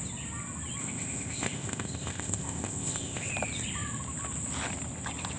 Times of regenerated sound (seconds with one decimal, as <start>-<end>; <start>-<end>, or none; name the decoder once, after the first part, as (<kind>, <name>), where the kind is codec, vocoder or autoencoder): 0.8-3.3 (codec, ZipCodec)